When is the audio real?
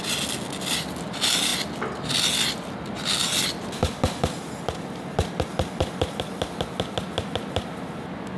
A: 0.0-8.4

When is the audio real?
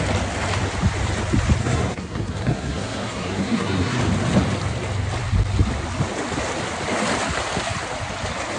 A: 0.0-1.6; 4.0-8.6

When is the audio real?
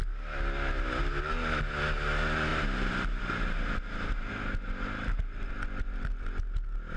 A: 0.0-7.0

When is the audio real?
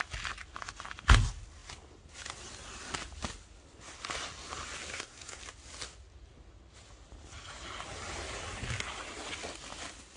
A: 0.0-4.9; 5.4-10.2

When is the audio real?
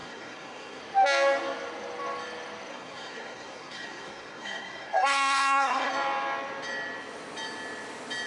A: 0.8-2.7; 5.9-8.3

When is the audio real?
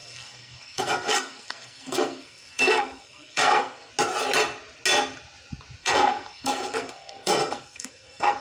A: 3.9-5.8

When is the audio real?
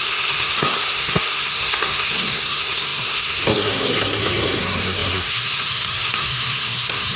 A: none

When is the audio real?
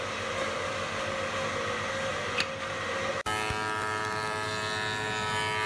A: 0.0-5.7